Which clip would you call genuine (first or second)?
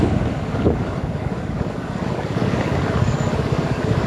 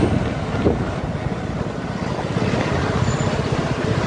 second